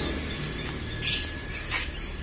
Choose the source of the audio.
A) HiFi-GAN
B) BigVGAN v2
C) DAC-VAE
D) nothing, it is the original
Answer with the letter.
D